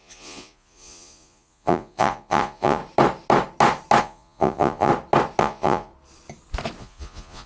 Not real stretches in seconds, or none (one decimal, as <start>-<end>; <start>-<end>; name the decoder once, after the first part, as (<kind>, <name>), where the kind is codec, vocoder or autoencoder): 0.0-2.8 (vocoder, Vocos); 4.0-4.9; 5.4-5.9; 6.8-7.5